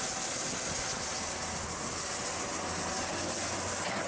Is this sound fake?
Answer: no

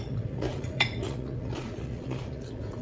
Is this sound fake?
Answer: yes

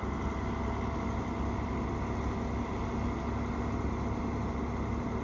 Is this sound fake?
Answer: no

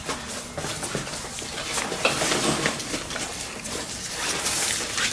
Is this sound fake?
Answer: no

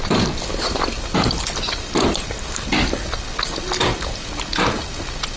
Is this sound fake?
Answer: no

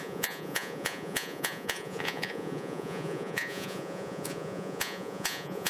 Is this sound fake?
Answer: yes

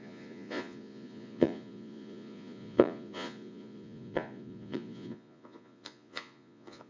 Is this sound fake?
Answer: yes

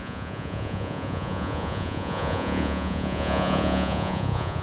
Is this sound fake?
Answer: yes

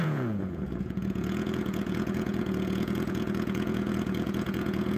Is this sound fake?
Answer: yes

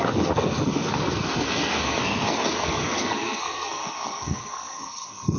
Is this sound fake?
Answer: yes